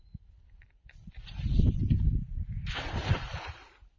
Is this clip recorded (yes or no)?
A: yes